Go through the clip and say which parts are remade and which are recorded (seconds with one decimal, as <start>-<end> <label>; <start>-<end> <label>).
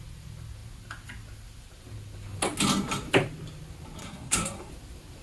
0.0-4.0 recorded; 4.0-4.7 remade; 4.7-5.2 recorded